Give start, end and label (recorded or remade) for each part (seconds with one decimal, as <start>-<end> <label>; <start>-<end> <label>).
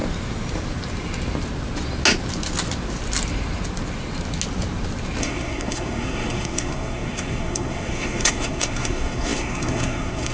0.0-5.2 recorded; 5.2-10.3 remade